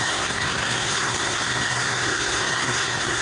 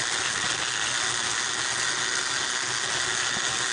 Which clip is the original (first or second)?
second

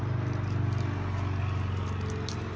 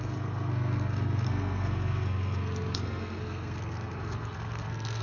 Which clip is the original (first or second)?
first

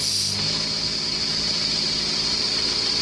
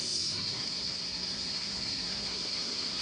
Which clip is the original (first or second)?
first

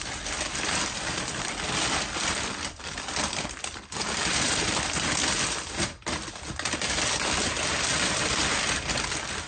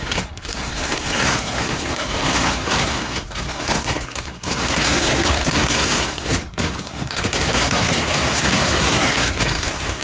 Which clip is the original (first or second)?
first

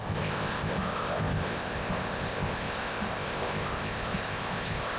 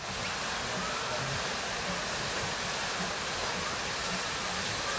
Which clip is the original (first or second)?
second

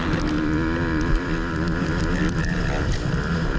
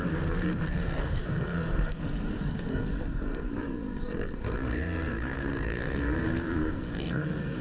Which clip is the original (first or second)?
first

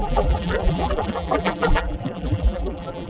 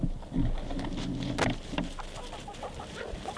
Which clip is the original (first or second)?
second